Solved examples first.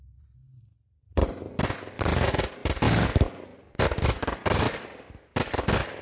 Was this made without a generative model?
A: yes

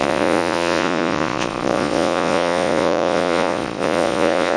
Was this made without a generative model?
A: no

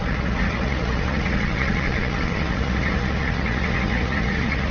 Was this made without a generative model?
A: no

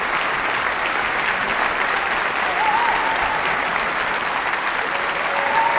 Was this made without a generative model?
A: yes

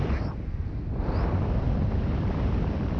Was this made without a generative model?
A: yes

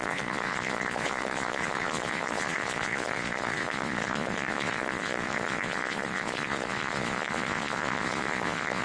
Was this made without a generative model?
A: no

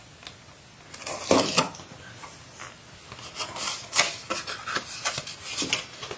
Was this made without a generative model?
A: yes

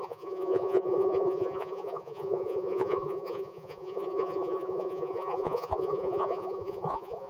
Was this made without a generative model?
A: no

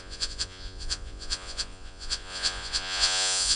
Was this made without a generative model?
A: no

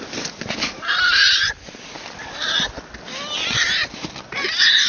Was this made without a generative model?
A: yes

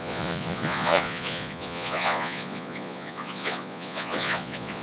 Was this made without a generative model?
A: no